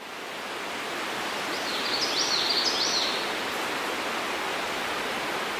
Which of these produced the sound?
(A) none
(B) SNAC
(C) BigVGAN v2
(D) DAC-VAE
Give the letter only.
A